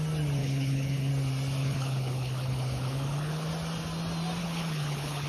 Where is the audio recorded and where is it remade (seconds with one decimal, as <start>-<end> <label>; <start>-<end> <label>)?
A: 0.0-0.4 recorded; 0.4-1.1 remade; 1.1-1.6 recorded; 1.6-3.5 remade; 3.5-4.4 recorded; 4.4-5.3 remade